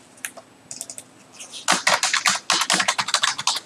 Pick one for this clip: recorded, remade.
recorded